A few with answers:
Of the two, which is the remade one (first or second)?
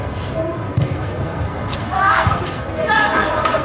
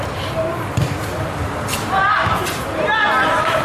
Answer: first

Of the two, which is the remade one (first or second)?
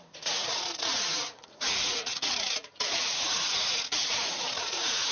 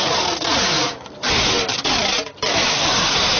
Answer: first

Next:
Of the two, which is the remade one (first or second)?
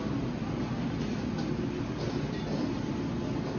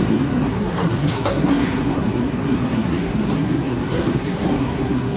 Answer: second